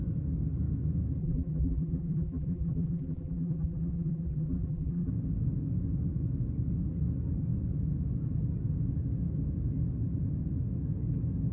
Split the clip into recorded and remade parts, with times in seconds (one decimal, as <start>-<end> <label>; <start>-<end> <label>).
0.0-1.2 recorded; 1.2-5.1 remade; 5.1-11.5 recorded